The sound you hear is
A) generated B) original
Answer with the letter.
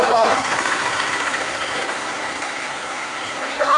A